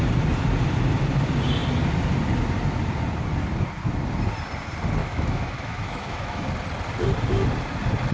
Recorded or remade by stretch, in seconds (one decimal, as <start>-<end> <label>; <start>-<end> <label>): 0.0-5.0 recorded; 5.0-6.5 remade; 6.5-8.1 recorded